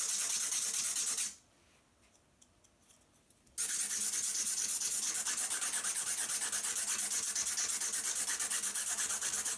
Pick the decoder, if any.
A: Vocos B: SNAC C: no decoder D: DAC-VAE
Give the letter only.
C